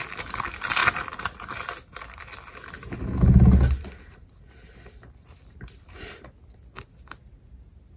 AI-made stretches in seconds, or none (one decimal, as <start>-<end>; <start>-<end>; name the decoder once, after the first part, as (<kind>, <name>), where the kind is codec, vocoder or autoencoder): none